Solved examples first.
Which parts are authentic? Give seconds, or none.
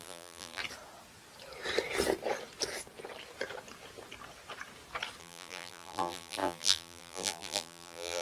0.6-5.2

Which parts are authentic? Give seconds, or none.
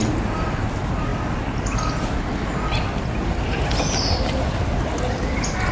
0.0-5.7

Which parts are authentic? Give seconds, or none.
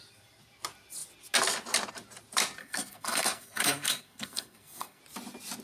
0.0-2.6; 5.0-5.6